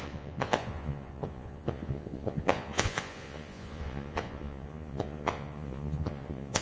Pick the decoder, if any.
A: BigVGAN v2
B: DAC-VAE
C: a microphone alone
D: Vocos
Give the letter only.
D